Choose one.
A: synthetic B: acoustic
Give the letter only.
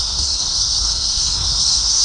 A